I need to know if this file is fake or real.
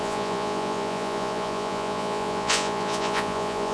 fake